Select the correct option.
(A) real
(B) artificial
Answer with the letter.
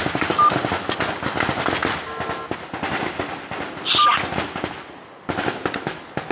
A